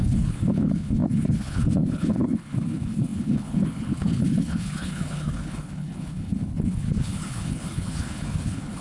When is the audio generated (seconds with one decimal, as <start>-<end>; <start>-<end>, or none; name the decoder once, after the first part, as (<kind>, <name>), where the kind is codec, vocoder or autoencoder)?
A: 0.0-8.8 (codec, HILCodec)